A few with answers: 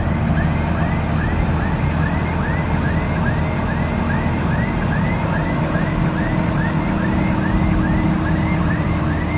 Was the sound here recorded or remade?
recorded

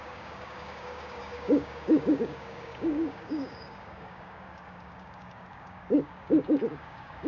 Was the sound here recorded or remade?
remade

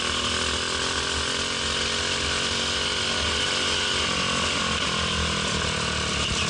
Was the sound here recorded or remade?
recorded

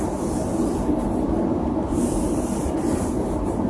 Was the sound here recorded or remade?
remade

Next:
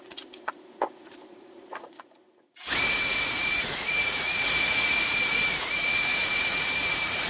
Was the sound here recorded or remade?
remade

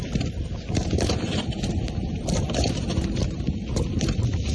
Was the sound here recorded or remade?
remade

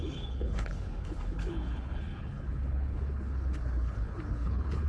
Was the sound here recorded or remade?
remade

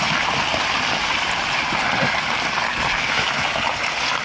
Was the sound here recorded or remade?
recorded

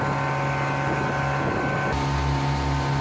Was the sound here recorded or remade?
recorded